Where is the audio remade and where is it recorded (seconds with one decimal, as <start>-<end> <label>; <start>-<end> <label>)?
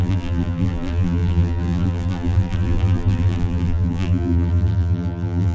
0.0-5.5 remade